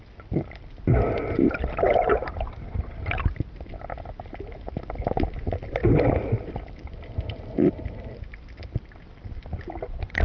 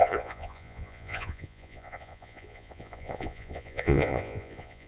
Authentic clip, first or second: first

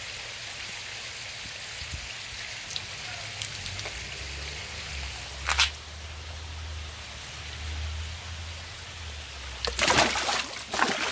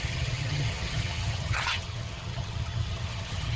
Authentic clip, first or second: first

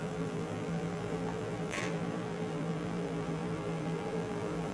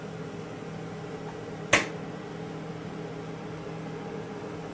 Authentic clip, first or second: second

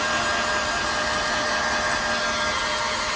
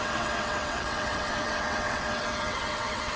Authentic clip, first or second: first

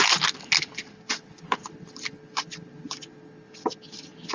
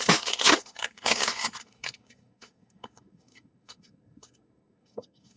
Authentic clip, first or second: first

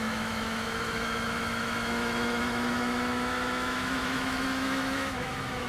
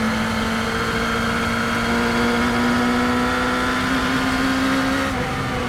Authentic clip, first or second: second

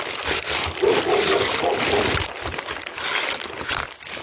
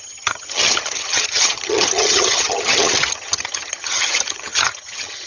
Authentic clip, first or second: first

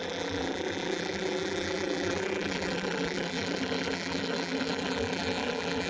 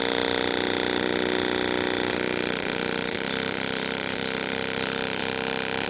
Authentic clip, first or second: second